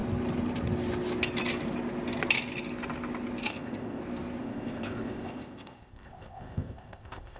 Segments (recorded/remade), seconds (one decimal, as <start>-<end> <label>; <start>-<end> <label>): 0.0-3.5 recorded; 3.5-4.0 remade; 4.0-4.4 recorded; 4.4-7.4 remade